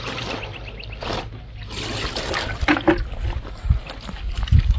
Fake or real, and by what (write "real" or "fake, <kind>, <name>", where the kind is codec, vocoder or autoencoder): real